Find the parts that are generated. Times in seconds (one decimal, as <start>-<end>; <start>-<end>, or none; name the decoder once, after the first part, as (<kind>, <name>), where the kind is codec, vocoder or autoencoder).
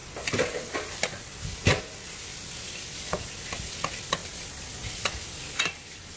none